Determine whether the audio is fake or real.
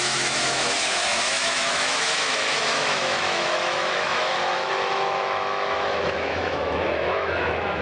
fake